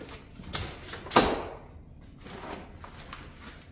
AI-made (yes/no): no